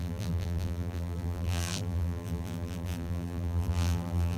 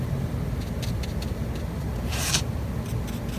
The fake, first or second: first